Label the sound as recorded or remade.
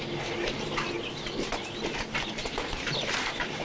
recorded